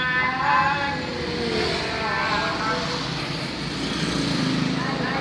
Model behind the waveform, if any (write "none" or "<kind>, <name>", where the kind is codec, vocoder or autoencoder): none